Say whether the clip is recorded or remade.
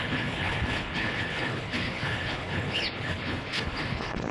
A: remade